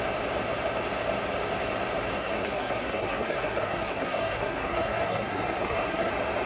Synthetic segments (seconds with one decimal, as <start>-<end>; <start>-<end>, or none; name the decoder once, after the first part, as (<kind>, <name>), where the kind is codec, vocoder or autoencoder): 2.2-6.1 (codec, SNAC)